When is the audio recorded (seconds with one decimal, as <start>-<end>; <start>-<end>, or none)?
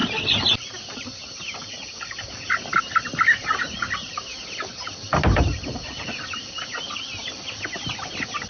0.0-8.5